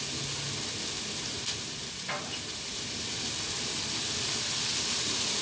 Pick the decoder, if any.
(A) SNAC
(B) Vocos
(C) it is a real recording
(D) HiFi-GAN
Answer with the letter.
C